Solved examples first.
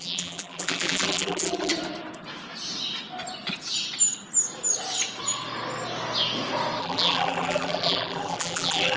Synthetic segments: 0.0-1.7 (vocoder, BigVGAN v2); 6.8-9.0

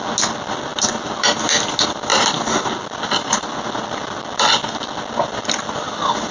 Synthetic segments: 0.7-1.4 (vocoder, BigVGAN v2); 2.1-2.8

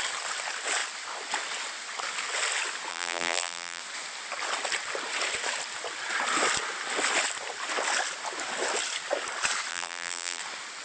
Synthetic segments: 2.9-3.8 (vocoder, BigVGAN v2); 9.7-10.4

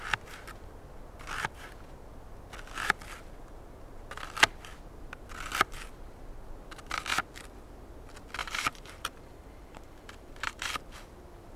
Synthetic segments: 8.4-10.7 (vocoder, BigVGAN v2)